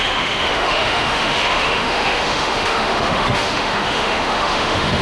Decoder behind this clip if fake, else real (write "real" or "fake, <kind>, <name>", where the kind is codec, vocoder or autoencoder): fake, autoencoder, DAC-VAE